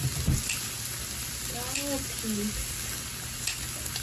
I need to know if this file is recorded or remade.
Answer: recorded